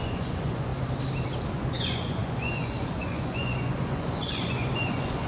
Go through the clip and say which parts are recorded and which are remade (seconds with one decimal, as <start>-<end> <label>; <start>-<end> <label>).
0.0-0.7 remade; 0.7-1.5 recorded; 1.5-5.3 remade